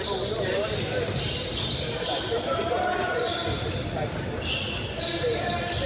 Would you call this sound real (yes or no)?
yes